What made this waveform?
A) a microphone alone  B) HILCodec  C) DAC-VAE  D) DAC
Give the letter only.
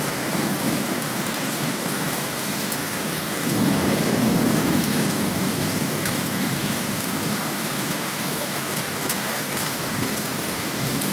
D